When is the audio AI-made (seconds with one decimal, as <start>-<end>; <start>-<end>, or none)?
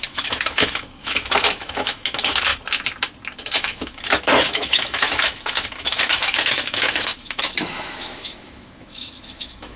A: 0.0-2.5; 3.6-9.8